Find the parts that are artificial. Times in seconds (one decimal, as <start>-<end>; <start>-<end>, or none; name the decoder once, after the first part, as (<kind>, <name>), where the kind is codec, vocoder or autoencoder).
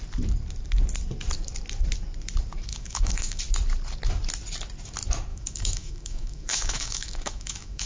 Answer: 2.7-3.4 (autoencoder, DAC-VAE); 5.3-7.9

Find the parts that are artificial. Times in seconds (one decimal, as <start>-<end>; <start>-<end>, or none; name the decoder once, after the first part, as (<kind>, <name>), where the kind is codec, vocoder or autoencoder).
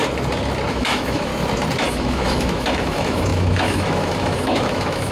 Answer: 0.7-1.3 (autoencoder, DAC-VAE); 1.9-5.1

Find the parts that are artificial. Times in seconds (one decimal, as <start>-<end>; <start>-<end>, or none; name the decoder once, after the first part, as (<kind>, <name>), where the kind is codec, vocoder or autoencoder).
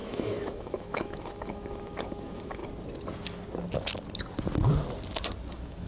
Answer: 0.0-2.6 (autoencoder, DAC-VAE); 5.5-5.9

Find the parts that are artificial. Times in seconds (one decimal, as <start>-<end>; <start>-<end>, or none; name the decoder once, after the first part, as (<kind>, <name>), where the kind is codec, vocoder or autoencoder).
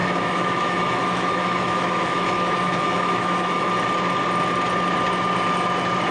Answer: 0.0-3.7 (autoencoder, DAC-VAE)